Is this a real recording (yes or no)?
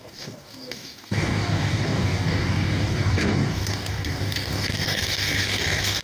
no